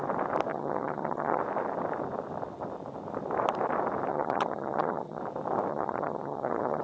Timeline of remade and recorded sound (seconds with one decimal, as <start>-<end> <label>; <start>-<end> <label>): 0.0-0.5 recorded; 0.5-1.4 remade; 1.4-4.1 recorded; 4.1-5.2 remade; 5.2-5.7 recorded; 5.7-6.8 remade